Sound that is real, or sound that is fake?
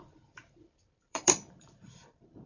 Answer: fake